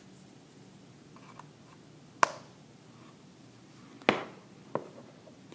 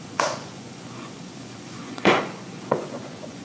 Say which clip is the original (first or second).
first